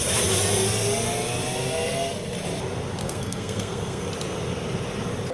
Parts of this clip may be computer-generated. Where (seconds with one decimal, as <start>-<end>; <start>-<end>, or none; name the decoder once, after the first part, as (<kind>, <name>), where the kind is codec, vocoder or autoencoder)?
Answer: 3.0-4.1 (codec, SNAC)